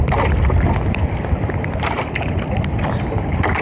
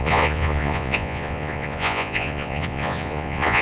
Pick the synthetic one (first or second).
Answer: second